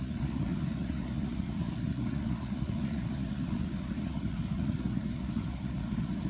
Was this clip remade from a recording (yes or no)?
yes